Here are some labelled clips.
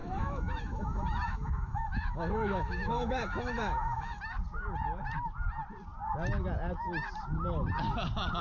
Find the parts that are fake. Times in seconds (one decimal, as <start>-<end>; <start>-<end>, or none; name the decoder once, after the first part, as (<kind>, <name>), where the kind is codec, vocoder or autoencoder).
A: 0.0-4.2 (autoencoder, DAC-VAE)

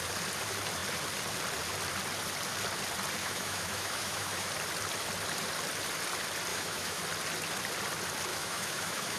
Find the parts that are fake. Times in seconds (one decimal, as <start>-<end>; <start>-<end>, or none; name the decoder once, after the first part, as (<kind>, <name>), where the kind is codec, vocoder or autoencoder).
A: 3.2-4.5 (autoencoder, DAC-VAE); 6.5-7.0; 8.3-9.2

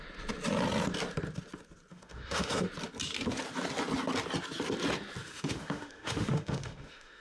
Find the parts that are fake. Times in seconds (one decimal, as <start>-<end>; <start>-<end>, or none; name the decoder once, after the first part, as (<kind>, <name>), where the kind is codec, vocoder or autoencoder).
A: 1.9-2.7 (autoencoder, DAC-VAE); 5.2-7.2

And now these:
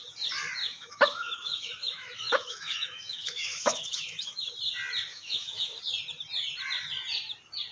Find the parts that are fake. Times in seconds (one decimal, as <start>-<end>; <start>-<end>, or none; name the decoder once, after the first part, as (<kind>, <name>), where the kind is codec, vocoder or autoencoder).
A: 0.6-4.5 (autoencoder, DAC-VAE); 5.1-5.8

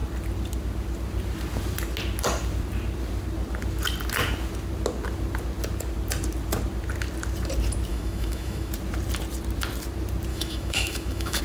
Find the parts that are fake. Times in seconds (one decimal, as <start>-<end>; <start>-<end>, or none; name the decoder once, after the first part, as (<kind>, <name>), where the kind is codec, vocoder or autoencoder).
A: 7.9-8.7 (autoencoder, DAC-VAE); 10.3-11.4

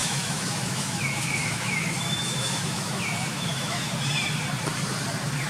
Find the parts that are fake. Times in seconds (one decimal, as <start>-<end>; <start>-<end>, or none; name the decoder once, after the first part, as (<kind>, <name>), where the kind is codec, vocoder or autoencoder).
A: 0.0-3.9 (autoencoder, DAC-VAE)